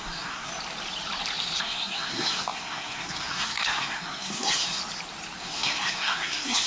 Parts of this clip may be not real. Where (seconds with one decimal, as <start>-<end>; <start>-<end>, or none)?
0.0-0.5; 1.6-4.8; 5.4-6.7